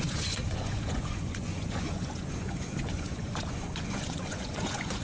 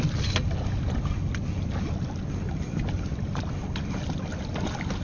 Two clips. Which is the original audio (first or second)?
second